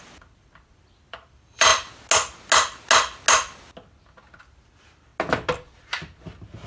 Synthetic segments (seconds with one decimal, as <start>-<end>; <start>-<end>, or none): 0.0-1.7; 4.4-5.1